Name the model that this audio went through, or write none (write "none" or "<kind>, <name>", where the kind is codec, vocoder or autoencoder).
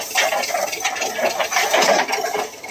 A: vocoder, BigVGAN v2